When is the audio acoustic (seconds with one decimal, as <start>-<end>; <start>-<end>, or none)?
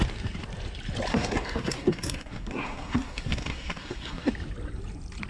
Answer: 0.0-1.1; 4.3-5.3